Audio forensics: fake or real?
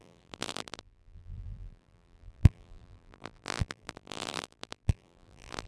fake